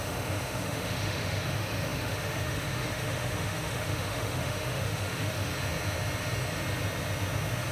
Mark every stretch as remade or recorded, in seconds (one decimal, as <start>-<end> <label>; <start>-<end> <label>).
0.0-5.5 remade; 5.5-7.7 recorded